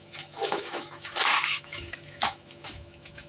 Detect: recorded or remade remade